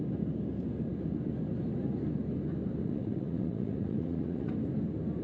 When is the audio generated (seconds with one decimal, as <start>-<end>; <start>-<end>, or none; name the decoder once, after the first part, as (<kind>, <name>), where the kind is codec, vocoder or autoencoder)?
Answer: 2.8-4.5 (vocoder, Vocos)